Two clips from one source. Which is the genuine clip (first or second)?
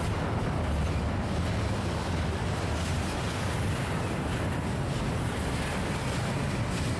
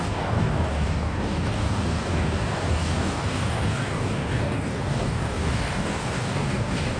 first